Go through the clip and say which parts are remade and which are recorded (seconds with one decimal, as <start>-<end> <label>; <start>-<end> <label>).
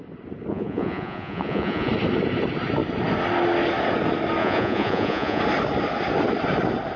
0.0-0.5 recorded; 0.5-1.9 remade; 1.9-4.4 recorded; 4.4-5.4 remade; 5.4-7.0 recorded